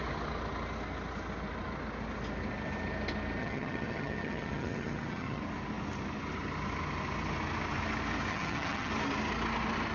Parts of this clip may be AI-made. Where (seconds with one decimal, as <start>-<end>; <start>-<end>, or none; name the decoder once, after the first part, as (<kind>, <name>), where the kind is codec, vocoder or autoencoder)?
3.4-5.4 (vocoder, HiFi-GAN); 8.3-8.9